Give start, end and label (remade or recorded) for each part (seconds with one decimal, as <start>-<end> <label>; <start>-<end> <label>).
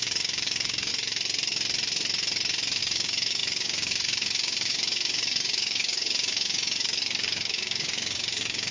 0.0-0.9 remade; 0.9-2.8 recorded; 2.8-8.7 remade